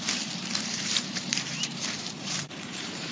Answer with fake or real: fake